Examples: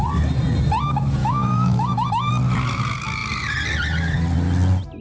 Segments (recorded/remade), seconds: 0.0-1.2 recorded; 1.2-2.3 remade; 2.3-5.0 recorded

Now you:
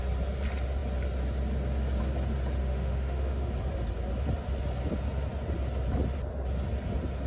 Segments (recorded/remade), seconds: 0.0-2.6 recorded; 2.6-3.5 remade; 3.5-7.3 recorded

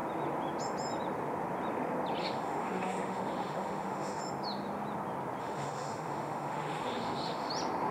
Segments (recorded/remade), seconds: 0.0-2.2 recorded; 2.2-4.2 remade; 4.2-5.4 recorded; 5.4-7.5 remade; 7.5-7.9 recorded

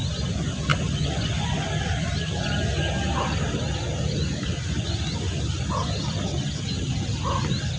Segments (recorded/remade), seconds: 0.0-7.8 recorded

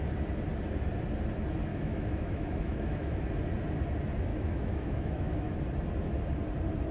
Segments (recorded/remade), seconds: 0.0-1.7 recorded; 1.7-3.2 remade; 3.2-4.3 recorded; 4.3-5.6 remade; 5.6-6.9 recorded